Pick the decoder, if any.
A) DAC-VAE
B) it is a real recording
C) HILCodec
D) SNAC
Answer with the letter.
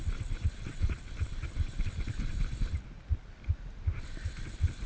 B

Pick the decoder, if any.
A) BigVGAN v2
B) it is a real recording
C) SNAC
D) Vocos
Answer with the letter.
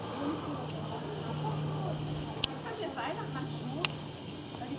B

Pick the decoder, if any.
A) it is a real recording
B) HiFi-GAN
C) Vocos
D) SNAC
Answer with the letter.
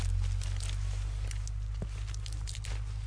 A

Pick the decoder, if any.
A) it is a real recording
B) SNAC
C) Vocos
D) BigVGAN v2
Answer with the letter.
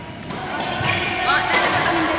A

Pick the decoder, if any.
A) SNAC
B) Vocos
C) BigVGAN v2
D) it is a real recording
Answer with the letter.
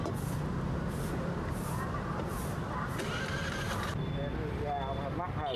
D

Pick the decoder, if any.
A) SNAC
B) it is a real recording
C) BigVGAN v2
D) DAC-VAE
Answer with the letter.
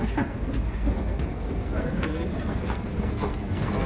A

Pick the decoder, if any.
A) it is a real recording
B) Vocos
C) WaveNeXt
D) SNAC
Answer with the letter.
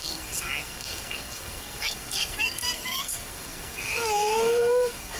D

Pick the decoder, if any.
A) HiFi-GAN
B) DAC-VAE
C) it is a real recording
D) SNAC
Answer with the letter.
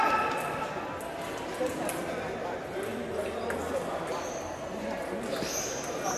C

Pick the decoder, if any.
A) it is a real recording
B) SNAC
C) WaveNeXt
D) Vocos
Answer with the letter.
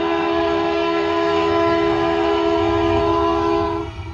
B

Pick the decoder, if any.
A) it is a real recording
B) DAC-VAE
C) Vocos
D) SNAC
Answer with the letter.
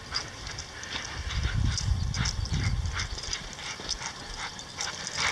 A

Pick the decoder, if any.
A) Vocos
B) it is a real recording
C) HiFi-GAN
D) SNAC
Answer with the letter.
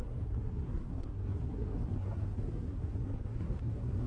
D